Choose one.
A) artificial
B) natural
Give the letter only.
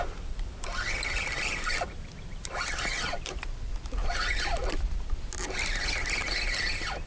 B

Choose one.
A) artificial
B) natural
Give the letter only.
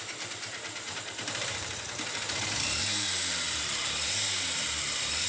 A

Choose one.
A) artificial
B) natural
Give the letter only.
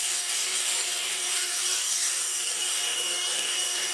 A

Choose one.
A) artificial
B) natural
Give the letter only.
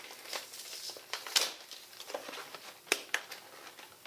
B